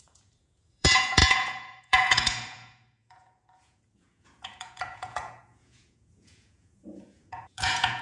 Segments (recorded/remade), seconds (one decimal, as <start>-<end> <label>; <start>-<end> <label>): 0.0-8.0 remade